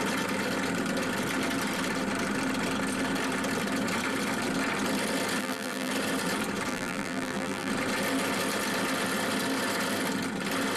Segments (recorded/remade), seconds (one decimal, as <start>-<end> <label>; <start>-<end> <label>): 0.0-5.4 recorded; 5.4-5.9 remade; 5.9-6.7 recorded; 6.7-7.7 remade; 7.7-10.8 recorded